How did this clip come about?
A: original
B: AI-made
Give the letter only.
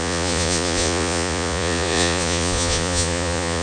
B